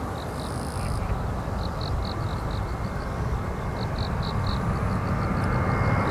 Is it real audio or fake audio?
real